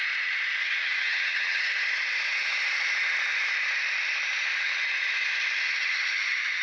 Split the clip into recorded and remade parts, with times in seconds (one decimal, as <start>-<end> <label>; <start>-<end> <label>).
0.0-0.6 recorded; 0.6-1.7 remade; 1.7-5.7 recorded; 5.7-6.6 remade